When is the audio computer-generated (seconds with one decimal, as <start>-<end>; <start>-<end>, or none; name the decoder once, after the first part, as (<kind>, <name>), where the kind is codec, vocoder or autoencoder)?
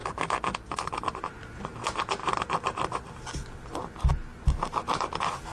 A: none